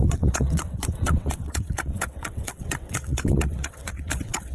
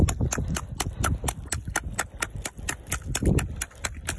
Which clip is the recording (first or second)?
second